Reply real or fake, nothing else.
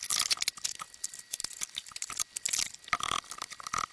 real